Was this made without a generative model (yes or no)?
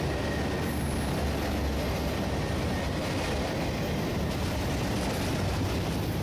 yes